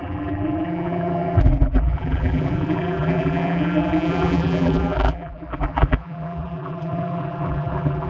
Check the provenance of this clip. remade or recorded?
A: remade